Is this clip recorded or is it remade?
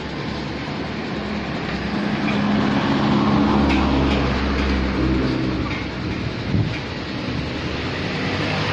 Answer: recorded